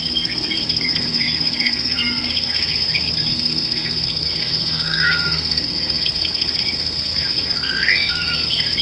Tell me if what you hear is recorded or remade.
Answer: remade